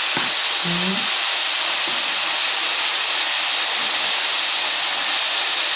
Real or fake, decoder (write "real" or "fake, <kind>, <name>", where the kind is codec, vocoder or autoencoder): real